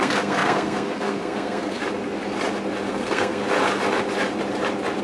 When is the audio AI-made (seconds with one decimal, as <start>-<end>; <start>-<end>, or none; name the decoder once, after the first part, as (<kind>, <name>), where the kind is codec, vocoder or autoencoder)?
0.0-1.8 (codec, SNAC); 2.9-3.4